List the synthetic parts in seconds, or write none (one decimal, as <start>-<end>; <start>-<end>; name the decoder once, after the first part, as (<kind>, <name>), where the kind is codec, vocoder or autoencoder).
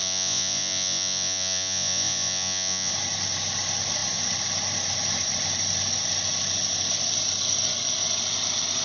0.0-2.9 (vocoder, Vocos)